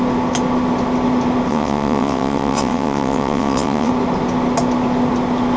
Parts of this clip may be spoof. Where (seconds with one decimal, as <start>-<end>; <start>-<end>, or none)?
1.5-3.9